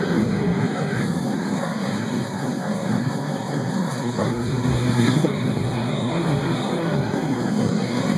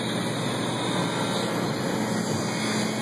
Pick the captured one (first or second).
second